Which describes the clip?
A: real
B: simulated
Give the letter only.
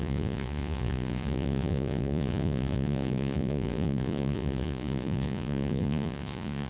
B